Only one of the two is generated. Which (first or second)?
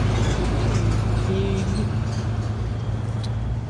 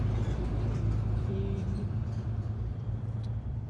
second